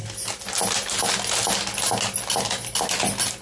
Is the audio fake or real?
real